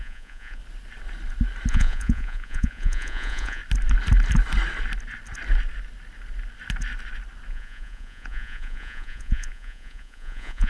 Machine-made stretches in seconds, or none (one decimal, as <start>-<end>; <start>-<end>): 0.0-0.6; 1.7-3.6; 7.5-10.7